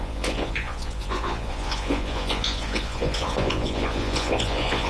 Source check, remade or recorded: remade